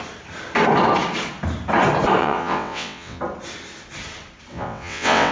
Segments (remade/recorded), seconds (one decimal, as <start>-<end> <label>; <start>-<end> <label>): 0.0-2.2 recorded; 2.2-3.2 remade; 3.2-4.5 recorded; 4.5-5.3 remade